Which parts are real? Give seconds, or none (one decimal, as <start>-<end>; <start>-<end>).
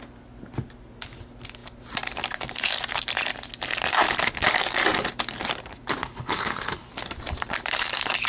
0.0-6.0; 6.9-8.3